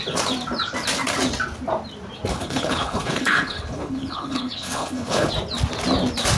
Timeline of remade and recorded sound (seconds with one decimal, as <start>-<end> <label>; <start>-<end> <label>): 0.0-2.3 recorded; 2.3-5.3 remade; 5.3-6.4 recorded